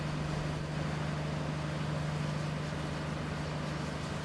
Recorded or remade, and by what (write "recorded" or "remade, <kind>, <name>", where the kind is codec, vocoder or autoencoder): recorded